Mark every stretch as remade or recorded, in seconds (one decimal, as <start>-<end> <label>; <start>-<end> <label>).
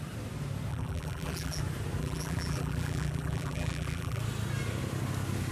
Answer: 0.0-0.7 recorded; 0.7-1.6 remade; 1.6-2.0 recorded; 2.0-4.2 remade; 4.2-5.5 recorded